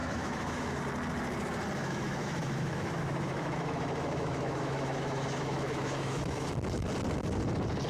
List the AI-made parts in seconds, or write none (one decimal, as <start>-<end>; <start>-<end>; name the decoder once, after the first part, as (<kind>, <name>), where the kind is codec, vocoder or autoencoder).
0.0-0.8 (autoencoder, DAC-VAE); 1.8-6.5